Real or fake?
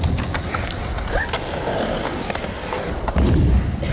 real